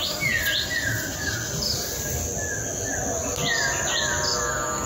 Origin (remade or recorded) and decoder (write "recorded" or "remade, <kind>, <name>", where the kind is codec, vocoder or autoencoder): recorded